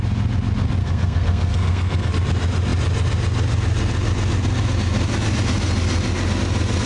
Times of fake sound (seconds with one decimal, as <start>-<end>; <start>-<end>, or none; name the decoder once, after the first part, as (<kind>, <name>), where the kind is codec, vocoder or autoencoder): 0.8-2.1 (codec, SNAC)